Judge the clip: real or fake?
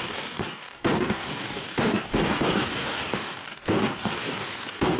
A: fake